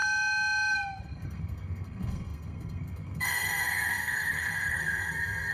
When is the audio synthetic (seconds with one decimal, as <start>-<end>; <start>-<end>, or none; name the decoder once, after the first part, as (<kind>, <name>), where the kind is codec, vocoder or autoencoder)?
1.0-5.5 (codec, SNAC)